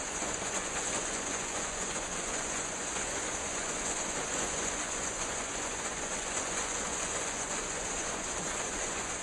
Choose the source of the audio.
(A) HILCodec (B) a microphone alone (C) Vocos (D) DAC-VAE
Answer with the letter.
C